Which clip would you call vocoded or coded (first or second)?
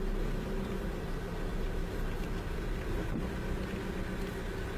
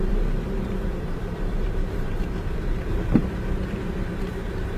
second